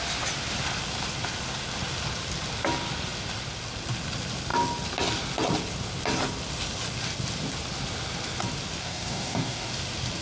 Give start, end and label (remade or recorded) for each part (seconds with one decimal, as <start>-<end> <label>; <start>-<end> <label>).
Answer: 0.0-8.8 recorded; 8.8-9.7 remade; 9.7-10.2 recorded